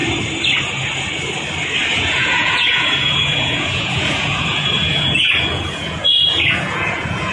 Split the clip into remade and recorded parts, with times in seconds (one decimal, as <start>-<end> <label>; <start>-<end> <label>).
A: 0.0-1.9 recorded; 1.9-7.3 remade